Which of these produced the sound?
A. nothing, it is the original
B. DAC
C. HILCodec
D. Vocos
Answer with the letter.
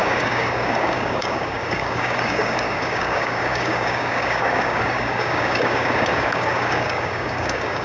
B